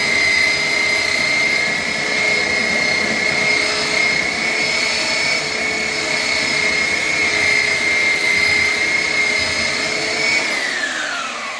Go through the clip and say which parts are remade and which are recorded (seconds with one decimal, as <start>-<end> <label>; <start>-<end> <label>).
0.0-11.6 recorded